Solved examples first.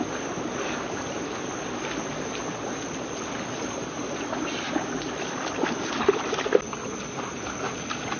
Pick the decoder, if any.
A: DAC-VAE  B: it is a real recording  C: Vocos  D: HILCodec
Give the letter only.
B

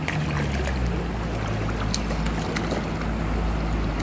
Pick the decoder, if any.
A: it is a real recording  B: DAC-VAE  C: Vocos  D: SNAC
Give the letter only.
A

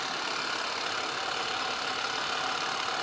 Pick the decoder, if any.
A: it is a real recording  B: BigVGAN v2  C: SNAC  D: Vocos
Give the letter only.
A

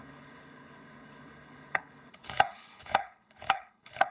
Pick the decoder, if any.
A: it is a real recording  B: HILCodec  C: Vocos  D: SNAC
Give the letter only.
B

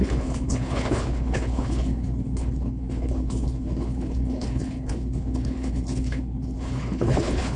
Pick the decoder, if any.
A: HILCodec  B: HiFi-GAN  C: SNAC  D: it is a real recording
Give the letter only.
A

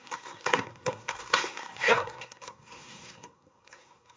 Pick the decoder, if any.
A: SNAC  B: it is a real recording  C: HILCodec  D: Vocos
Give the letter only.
A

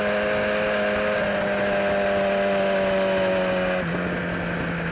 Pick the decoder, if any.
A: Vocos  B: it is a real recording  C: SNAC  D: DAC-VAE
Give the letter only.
B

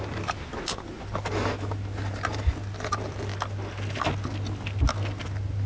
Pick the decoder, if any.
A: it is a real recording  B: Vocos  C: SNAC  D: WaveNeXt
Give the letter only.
A